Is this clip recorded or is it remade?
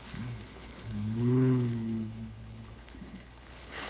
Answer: remade